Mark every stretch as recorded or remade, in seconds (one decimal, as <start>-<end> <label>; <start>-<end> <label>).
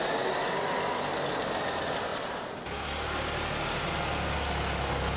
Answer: 0.0-5.2 recorded